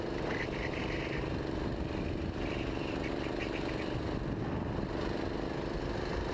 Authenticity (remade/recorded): recorded